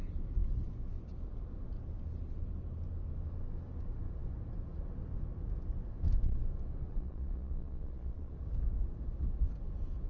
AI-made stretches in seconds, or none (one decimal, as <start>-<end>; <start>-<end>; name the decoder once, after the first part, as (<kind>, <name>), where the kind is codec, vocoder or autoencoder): 6.9-8.3 (vocoder, Vocos)